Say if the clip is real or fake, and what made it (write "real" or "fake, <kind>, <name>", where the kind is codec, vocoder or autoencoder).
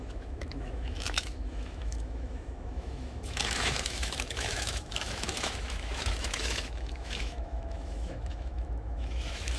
fake, autoencoder, DAC-VAE